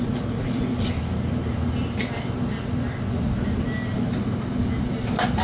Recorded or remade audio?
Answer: recorded